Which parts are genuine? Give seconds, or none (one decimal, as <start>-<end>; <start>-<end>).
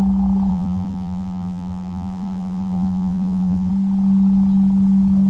0.0-0.5; 3.7-5.3